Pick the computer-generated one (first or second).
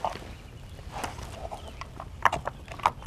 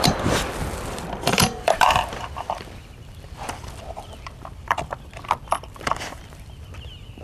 second